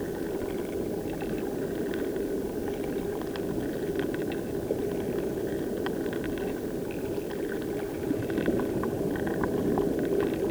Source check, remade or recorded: recorded